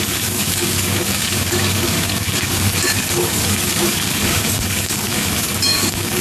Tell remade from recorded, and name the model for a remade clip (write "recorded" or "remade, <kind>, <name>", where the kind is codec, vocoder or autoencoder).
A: remade, codec, DAC